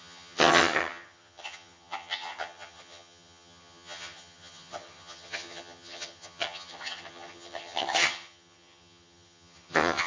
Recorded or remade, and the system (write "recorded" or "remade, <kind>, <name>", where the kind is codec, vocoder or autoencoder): remade, vocoder, HiFi-GAN